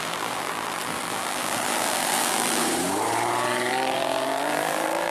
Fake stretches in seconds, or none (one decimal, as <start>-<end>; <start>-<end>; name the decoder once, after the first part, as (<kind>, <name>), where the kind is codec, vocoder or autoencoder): 0.0-2.6 (vocoder, BigVGAN v2); 3.7-5.1